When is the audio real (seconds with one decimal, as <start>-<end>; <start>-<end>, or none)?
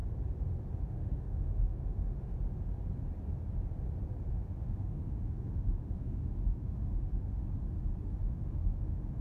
0.0-0.8; 2.3-4.3; 7.4-8.0